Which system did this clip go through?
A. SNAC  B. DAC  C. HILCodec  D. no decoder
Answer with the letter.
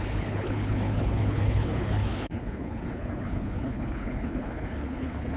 C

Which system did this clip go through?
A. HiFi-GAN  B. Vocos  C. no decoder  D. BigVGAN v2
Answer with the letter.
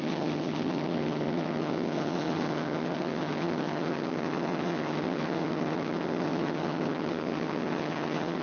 A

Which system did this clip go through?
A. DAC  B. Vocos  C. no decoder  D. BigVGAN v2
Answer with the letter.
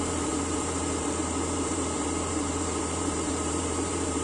D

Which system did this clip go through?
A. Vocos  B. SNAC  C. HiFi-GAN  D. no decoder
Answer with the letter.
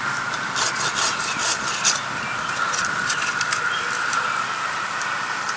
D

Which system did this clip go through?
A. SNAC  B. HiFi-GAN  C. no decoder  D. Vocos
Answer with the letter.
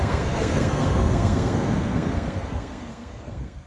A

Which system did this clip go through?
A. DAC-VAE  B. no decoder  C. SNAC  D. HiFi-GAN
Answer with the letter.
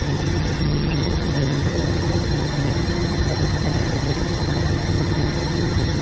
D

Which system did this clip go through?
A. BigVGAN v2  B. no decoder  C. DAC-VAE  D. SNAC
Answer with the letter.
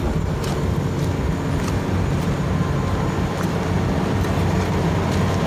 B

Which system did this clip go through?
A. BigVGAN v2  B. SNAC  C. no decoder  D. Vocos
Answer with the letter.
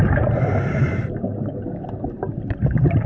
C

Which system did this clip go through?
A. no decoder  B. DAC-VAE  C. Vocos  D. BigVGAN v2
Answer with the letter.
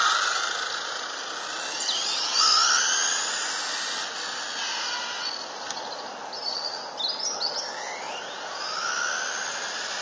A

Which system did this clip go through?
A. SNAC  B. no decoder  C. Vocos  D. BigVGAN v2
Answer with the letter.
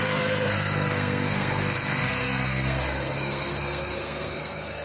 A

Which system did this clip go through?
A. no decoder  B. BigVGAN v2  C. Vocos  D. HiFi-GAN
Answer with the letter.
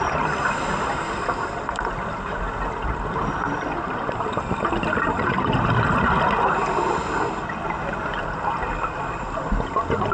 A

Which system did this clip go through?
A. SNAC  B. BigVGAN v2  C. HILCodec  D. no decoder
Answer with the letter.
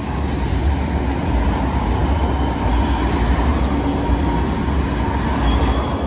D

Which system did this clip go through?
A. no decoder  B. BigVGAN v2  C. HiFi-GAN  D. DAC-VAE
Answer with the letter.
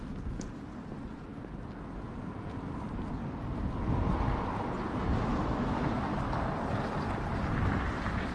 A